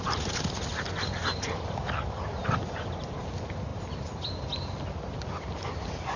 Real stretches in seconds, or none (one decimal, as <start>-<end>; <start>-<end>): 0.0-6.2